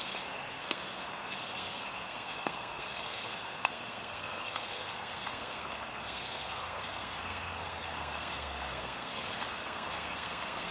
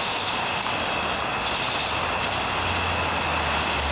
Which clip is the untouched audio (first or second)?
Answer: second